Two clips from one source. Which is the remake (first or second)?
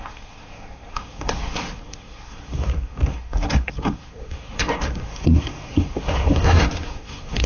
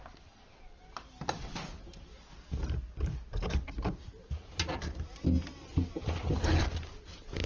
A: first